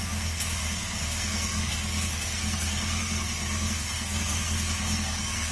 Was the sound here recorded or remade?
remade